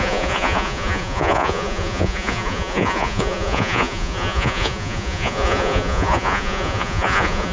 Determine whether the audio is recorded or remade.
remade